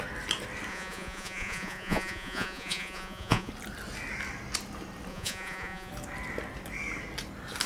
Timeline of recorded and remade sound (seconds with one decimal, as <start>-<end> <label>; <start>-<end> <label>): 0.0-0.7 recorded; 0.7-3.5 remade; 3.5-5.1 recorded; 5.1-5.9 remade; 5.9-7.7 recorded